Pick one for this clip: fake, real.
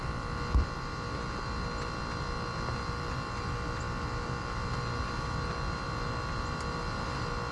real